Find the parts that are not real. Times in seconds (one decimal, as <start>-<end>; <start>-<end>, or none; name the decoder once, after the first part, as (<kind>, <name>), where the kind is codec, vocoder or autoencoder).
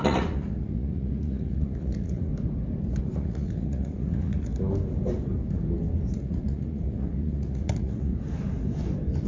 0.0-2.3 (vocoder, Vocos); 3.0-4.5; 6.1-8.1